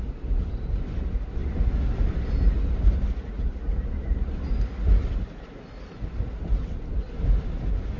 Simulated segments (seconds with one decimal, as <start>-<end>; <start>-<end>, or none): none